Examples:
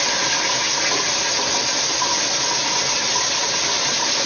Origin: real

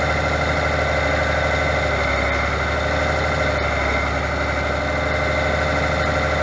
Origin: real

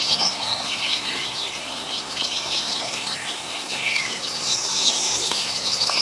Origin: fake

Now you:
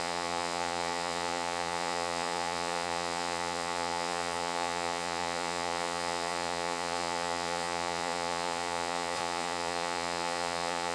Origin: fake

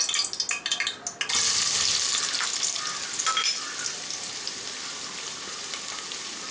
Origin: real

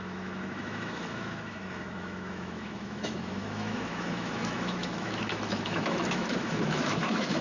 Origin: fake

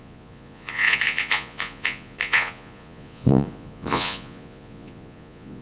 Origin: fake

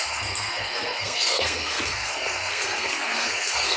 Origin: fake